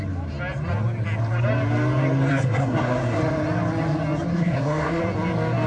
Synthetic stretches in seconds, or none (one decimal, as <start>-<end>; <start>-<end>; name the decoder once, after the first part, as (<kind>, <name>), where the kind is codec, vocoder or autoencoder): 2.3-3.2 (codec, SNAC); 4.3-5.0